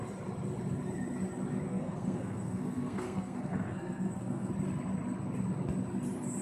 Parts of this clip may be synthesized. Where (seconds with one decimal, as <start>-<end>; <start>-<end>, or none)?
1.7-4.5